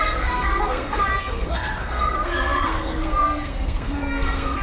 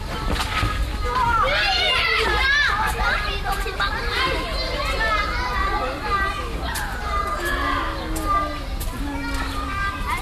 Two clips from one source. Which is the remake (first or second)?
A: first